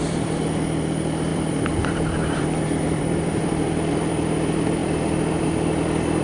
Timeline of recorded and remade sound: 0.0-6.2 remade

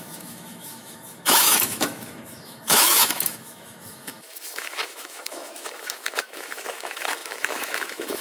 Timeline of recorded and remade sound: 0.0-8.2 remade